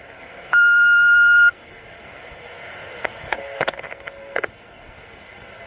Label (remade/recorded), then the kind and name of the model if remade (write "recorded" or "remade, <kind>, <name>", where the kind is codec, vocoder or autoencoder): remade, codec, SNAC